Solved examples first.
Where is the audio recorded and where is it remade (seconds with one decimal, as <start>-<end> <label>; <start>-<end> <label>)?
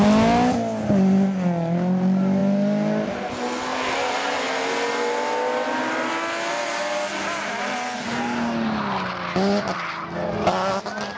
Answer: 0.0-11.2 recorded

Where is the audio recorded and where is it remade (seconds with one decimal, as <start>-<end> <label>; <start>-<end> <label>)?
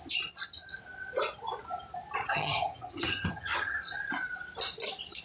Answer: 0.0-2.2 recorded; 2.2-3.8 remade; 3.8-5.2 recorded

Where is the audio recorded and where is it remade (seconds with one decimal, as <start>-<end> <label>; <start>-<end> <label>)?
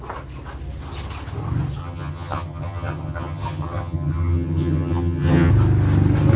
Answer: 0.0-1.8 recorded; 1.8-5.5 remade; 5.5-6.4 recorded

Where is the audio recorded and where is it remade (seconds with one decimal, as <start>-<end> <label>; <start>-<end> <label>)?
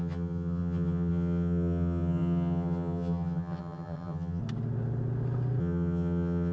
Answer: 0.0-4.4 remade; 4.4-5.6 recorded; 5.6-6.5 remade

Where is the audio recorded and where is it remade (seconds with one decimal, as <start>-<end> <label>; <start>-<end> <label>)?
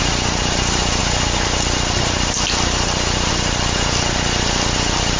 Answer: 0.0-5.2 recorded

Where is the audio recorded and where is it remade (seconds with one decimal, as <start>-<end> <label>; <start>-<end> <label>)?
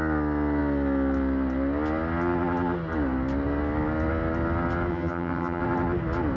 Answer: 0.0-4.9 recorded; 4.9-5.6 remade; 5.6-6.4 recorded